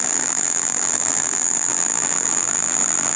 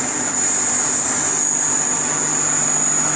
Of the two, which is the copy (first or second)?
first